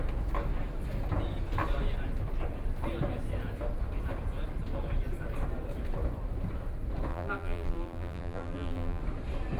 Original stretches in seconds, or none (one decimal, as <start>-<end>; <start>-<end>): 0.0-7.1; 9.0-9.6